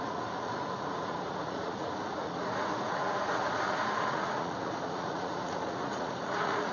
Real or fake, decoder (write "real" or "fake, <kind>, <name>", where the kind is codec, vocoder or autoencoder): fake, vocoder, Vocos